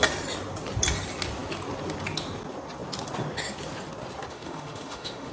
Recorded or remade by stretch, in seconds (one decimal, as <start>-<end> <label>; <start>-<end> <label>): 0.0-4.3 recorded; 4.3-5.3 remade